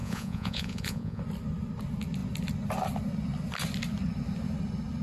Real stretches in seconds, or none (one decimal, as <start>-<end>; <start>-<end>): 1.2-5.0